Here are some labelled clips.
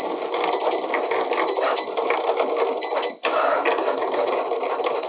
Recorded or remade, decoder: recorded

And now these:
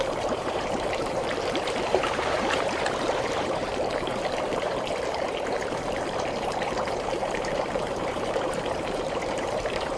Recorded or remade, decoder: remade, vocoder, BigVGAN v2